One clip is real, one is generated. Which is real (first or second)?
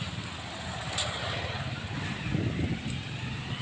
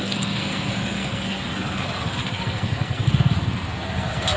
first